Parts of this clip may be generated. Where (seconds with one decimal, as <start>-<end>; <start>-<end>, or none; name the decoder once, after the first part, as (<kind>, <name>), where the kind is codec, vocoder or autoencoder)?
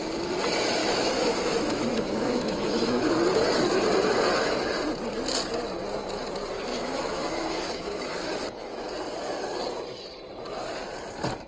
0.8-3.1 (autoencoder, DAC-VAE); 6.7-8.9